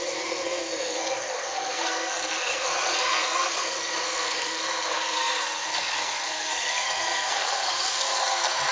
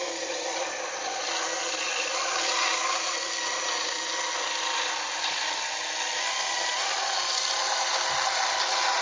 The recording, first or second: second